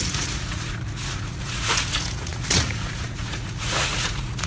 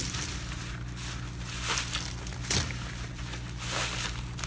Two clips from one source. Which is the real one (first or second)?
second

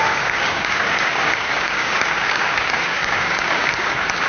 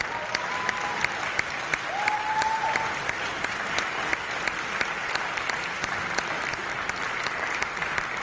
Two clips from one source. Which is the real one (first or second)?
second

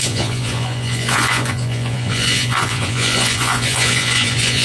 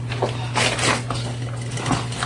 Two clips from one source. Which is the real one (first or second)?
second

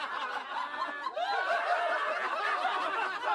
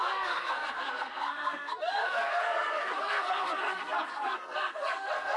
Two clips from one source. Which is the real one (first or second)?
first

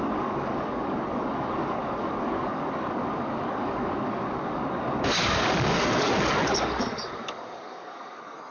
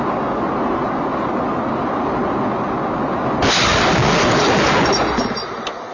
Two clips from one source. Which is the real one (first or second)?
second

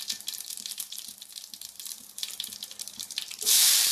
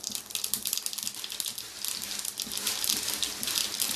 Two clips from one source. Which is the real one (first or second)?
second